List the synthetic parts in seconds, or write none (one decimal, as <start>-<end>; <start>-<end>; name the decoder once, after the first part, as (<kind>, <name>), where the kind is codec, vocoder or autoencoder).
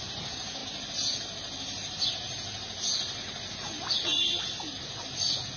none